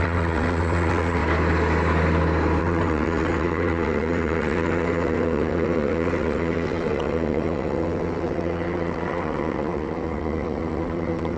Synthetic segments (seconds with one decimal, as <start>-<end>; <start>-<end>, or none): 0.0-1.2; 2.6-11.4